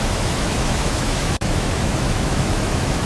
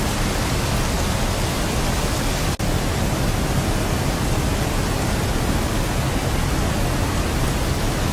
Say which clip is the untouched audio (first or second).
second